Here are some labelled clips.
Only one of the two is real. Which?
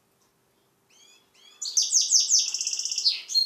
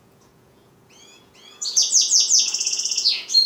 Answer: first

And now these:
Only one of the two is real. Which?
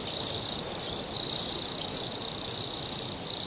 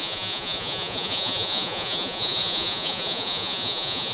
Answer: first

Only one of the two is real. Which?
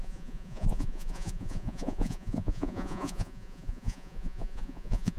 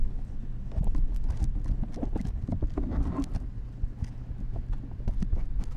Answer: second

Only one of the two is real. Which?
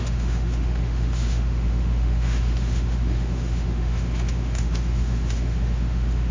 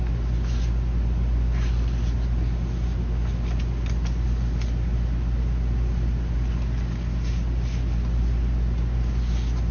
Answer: second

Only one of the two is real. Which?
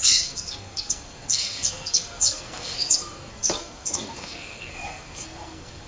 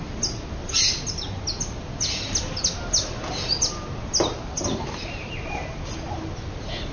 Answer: second